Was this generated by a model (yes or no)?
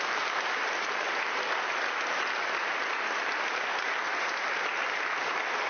no